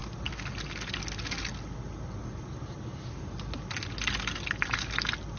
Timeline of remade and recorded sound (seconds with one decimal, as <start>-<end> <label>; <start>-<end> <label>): 0.0-5.4 recorded